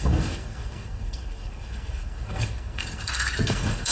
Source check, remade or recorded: remade